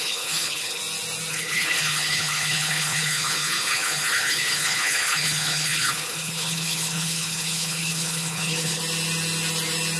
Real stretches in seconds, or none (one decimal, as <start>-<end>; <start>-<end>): 0.8-1.3; 8.8-10.0